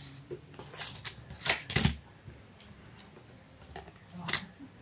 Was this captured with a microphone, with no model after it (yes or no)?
yes